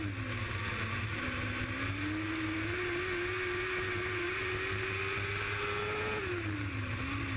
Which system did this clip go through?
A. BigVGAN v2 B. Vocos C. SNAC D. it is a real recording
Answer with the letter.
D